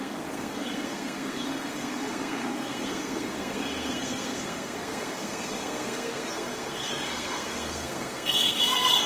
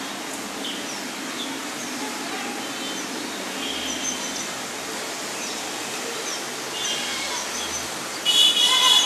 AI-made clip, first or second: first